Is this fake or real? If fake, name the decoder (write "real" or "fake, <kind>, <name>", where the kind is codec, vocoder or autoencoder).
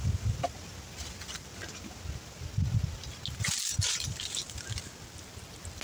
real